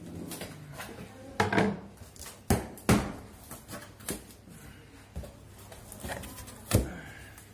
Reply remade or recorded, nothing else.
recorded